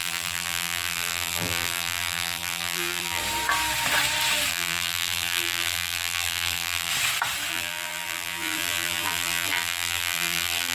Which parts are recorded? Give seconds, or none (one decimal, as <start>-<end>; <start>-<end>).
3.2-4.5; 6.9-7.5